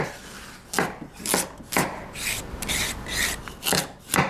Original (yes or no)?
yes